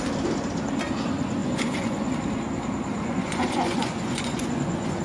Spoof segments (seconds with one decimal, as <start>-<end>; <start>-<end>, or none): 1.4-2.1; 2.9-5.0